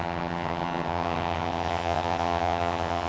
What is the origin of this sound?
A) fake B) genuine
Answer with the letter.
A